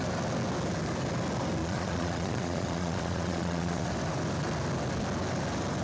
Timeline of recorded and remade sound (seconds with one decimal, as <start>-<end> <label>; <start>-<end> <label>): 0.0-1.6 recorded; 1.6-3.9 remade; 3.9-5.8 recorded